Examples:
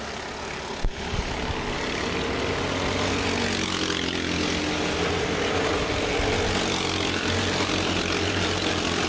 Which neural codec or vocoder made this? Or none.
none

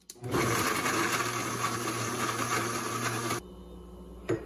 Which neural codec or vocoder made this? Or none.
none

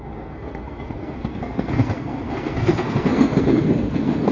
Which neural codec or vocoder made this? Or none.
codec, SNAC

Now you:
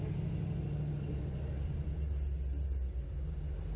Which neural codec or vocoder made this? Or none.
none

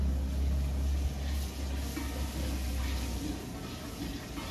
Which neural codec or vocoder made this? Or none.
none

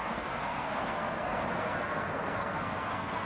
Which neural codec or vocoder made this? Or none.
codec, SNAC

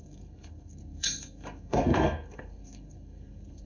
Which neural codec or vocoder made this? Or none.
codec, SNAC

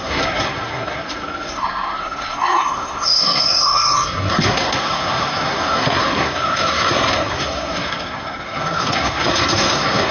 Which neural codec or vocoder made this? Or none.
codec, SNAC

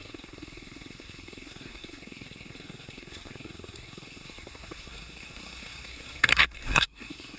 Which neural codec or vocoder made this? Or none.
codec, SNAC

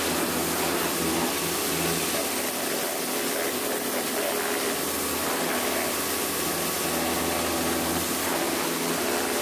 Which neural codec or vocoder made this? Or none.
none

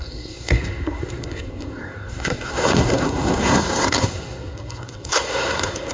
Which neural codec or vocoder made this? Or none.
codec, SNAC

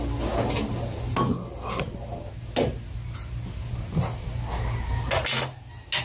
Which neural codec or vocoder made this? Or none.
none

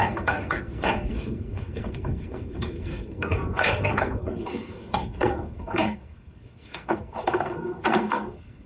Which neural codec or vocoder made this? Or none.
codec, SNAC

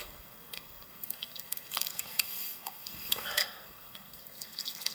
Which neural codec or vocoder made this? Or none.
codec, SNAC